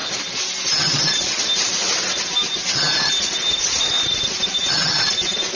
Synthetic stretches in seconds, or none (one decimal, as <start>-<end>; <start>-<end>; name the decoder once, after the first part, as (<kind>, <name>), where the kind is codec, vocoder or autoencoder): 3.0-4.6 (vocoder, BigVGAN v2); 5.1-5.6